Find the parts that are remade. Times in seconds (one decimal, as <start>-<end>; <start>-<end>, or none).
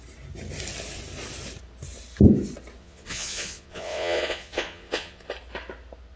2.8-5.3